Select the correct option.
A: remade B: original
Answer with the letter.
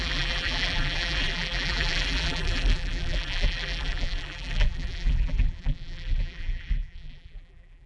A